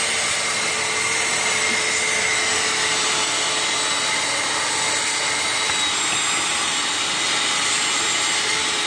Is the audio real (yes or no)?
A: yes